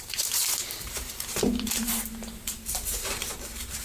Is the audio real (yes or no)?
no